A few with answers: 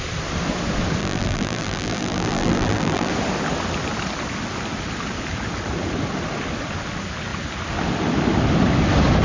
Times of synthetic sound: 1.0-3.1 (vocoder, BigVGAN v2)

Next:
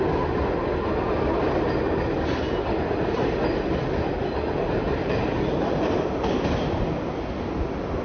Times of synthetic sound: 4.9-6.7 (vocoder, BigVGAN v2)

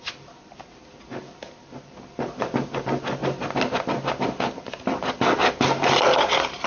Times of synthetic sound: none

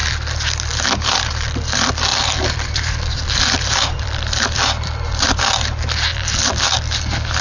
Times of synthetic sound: 2.1-5.4 (vocoder, BigVGAN v2); 6.1-6.6

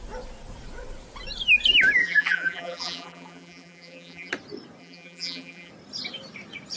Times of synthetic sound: 2.0-4.3 (vocoder, BigVGAN v2); 4.8-5.7

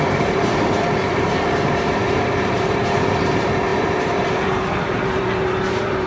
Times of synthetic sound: 0.0-6.1 (vocoder, BigVGAN v2)

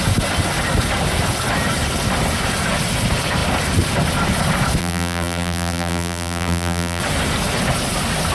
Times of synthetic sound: 4.8-7.0 (vocoder, BigVGAN v2)

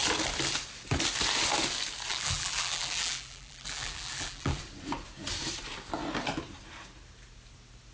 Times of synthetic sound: 2.1-4.6 (vocoder, BigVGAN v2)